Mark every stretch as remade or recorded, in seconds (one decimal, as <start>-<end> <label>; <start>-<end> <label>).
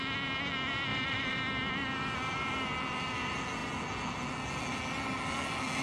0.0-0.9 recorded; 0.9-1.4 remade; 1.4-5.8 recorded